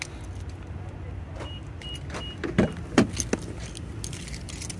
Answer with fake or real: real